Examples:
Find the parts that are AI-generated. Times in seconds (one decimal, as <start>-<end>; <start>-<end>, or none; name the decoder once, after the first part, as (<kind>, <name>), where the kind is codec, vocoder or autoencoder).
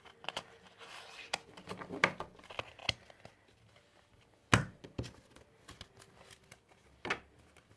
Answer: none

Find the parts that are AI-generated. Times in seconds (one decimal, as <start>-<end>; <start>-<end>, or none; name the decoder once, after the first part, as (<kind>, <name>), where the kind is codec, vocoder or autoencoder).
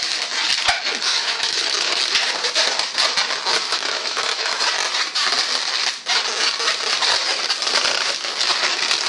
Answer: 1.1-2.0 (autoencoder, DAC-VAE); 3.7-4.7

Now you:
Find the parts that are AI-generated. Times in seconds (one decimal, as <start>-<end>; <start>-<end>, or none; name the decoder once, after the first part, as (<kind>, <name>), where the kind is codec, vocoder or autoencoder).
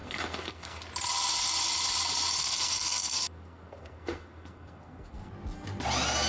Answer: 0.0-0.8 (codec, SNAC); 2.4-5.3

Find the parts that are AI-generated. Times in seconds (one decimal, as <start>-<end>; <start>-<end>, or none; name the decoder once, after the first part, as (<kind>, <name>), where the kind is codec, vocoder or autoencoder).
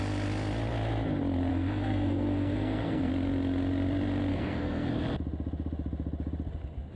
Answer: 1.5-3.1 (codec, SNAC); 4.3-4.9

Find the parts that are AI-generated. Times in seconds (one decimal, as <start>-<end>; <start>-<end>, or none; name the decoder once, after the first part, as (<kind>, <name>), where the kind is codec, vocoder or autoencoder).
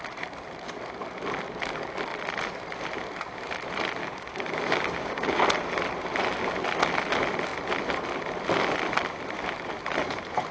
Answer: 4.0-5.4 (codec, DAC)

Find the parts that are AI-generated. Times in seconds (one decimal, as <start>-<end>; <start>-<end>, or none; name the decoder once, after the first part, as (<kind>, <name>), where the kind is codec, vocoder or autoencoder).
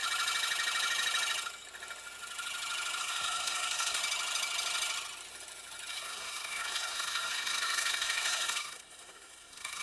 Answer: 3.0-4.0 (codec, SNAC); 5.9-9.8